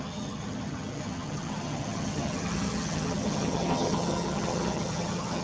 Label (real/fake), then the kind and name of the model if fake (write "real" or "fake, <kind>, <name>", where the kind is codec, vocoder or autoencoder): fake, vocoder, HiFi-GAN